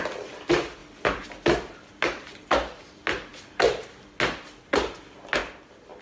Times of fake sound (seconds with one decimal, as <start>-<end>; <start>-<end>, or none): none